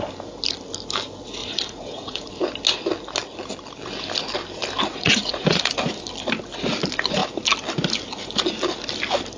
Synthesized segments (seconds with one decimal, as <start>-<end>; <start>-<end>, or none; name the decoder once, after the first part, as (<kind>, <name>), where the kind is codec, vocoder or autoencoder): 1.4-2.3 (vocoder, Vocos); 4.9-5.7

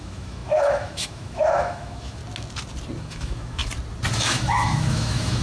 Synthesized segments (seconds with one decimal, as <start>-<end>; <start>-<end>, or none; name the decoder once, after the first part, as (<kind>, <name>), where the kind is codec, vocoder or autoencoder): 0.0-2.2 (autoencoder, DAC-VAE); 3.0-3.6; 4.1-5.4